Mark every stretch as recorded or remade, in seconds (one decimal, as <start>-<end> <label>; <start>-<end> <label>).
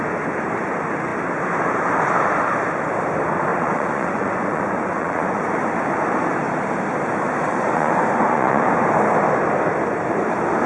0.0-3.5 recorded; 3.5-5.5 remade; 5.5-7.5 recorded; 7.5-8.8 remade; 8.8-10.7 recorded